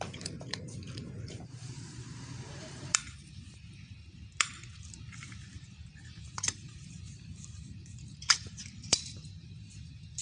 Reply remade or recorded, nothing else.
remade